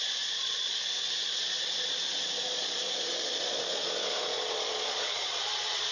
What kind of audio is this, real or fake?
fake